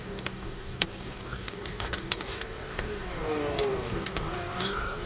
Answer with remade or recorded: remade